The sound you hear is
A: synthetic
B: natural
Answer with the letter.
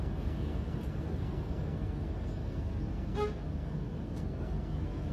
A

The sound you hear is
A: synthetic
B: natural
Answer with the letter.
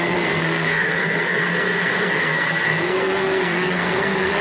A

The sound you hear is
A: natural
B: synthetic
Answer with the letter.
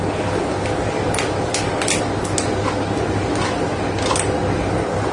A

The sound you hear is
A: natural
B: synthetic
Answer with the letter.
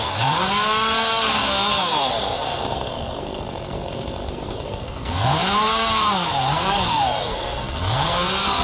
B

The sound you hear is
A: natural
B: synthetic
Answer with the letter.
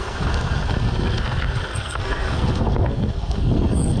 B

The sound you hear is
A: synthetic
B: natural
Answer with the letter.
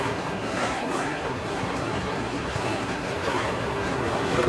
A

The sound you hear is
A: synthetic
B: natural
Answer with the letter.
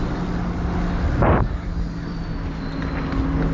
B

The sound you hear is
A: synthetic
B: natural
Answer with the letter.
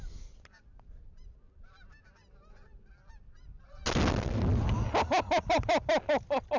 B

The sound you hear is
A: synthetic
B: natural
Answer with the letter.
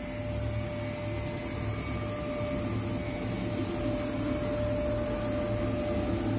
B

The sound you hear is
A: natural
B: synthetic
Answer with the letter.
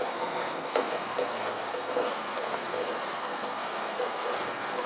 B